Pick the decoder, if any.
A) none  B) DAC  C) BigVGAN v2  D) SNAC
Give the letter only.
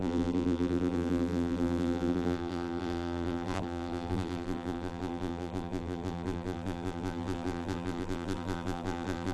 C